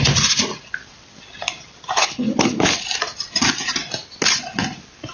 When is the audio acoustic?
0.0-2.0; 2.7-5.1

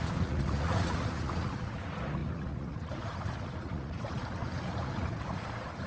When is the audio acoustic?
none

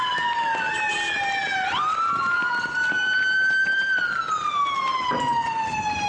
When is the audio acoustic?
0.0-6.1

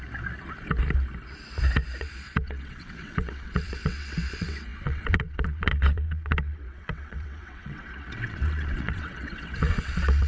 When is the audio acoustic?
0.0-2.0

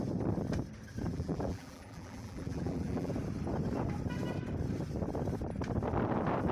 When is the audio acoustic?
0.0-1.1; 3.1-6.5